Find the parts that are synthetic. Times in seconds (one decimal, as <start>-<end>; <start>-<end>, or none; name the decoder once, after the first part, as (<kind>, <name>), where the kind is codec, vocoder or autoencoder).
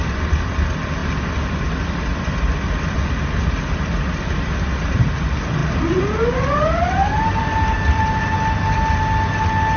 none